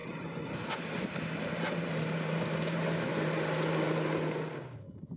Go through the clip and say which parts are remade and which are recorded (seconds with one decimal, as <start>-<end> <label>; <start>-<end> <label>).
0.0-5.2 recorded